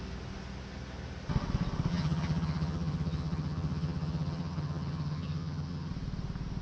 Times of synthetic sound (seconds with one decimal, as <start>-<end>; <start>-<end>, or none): 1.9-5.9

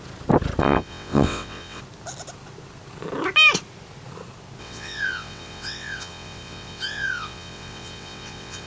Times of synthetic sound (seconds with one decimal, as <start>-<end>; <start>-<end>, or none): 0.6-1.8; 4.6-8.7

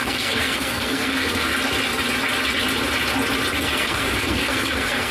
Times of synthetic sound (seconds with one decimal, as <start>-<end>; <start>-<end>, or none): 0.0-1.5; 3.6-5.1

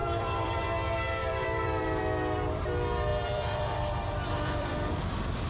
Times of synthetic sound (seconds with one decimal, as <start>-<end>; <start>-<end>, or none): 0.0-0.6; 1.2-2.0; 3.1-5.0

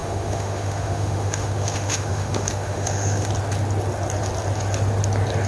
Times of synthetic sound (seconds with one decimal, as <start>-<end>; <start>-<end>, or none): 0.0-3.3

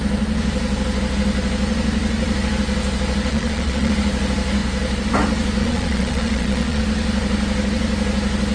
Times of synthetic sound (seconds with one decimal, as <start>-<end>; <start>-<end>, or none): 3.3-3.9; 5.6-6.8

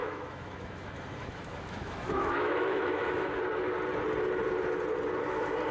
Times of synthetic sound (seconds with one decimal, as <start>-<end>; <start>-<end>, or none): 0.0-3.4